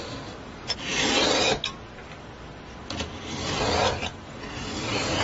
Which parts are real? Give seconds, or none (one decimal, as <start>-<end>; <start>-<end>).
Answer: 0.0-5.2